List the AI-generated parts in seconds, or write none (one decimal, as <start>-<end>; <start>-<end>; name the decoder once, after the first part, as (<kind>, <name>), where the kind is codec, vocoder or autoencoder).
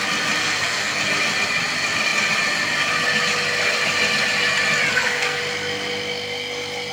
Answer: 0.4-1.0 (codec, SNAC); 4.9-5.4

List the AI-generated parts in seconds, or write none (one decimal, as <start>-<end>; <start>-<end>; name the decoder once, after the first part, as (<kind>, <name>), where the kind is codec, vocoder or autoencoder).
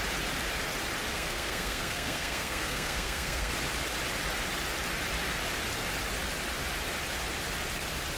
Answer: 1.1-3.5 (codec, SNAC)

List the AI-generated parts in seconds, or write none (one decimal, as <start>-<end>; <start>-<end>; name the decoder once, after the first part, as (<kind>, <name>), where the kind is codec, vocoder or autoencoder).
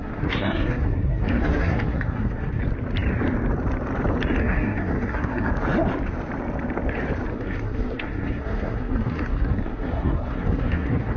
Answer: 0.0-2.6 (codec, SNAC); 4.4-5.5; 7.3-11.2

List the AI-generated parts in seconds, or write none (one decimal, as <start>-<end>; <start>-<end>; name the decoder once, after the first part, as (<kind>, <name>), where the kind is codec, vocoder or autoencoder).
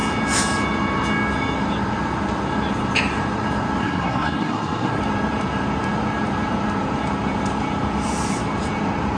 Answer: 3.8-5.0 (codec, SNAC)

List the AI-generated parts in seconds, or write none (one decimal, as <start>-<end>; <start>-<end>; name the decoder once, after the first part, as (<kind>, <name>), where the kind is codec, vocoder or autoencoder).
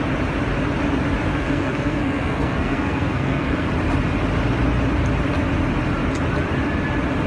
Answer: 1.3-3.7 (codec, SNAC)